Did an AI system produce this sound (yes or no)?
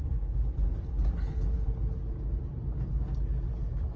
no